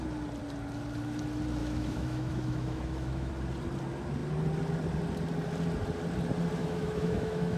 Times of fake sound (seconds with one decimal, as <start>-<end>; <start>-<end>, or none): 1.6-3.3; 6.6-7.6